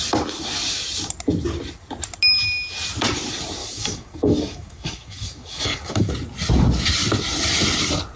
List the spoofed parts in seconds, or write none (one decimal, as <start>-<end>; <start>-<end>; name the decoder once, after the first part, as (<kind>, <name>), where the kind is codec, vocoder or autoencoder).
3.6-6.1 (codec, DAC)